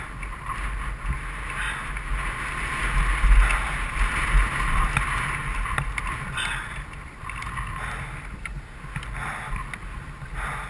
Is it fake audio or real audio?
real